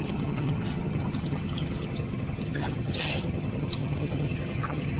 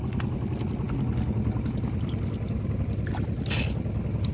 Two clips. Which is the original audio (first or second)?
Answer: second